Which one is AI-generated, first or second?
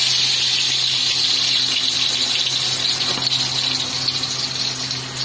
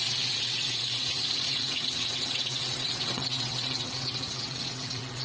second